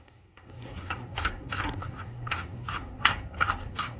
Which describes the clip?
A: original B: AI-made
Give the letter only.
B